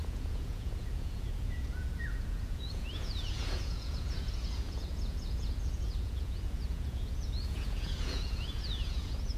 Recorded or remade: remade